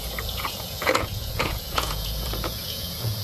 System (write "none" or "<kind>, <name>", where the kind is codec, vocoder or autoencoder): vocoder, Vocos